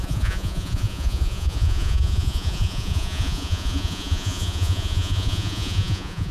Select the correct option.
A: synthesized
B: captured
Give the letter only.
A